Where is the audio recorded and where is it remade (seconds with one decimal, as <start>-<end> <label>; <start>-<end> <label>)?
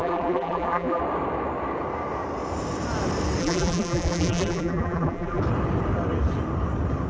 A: 0.0-1.0 remade; 1.0-3.4 recorded; 3.4-5.4 remade; 5.4-7.1 recorded